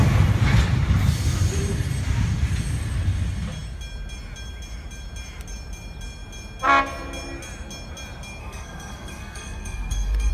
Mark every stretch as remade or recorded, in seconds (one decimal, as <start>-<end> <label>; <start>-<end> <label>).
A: 0.0-8.4 recorded; 8.4-10.3 remade